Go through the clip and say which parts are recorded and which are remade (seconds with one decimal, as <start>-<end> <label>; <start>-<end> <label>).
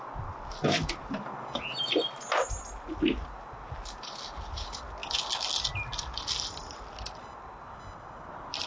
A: 0.0-8.7 recorded